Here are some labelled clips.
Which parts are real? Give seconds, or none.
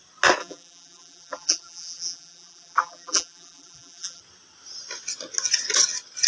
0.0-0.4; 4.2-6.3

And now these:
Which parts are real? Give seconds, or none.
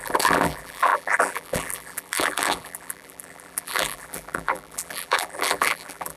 none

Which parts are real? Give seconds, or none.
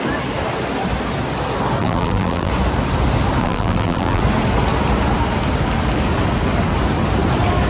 0.0-1.8; 2.5-3.4; 4.2-7.7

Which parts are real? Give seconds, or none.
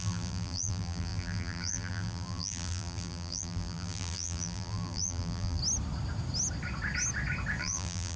5.6-7.6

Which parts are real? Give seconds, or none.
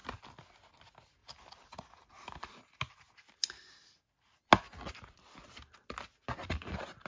0.0-1.2; 2.1-7.1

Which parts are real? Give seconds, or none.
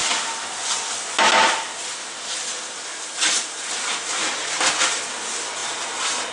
0.0-2.9; 3.7-5.6